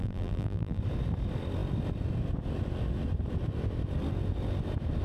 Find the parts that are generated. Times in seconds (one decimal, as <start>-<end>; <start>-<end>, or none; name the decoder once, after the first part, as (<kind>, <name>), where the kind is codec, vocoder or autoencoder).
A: 0.0-0.8 (vocoder, BigVGAN v2)